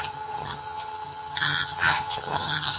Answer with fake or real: fake